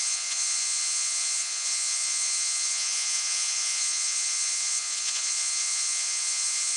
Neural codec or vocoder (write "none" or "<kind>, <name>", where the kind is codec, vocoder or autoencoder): vocoder, Vocos